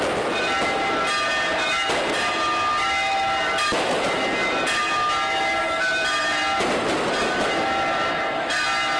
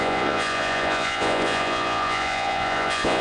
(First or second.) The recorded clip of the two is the first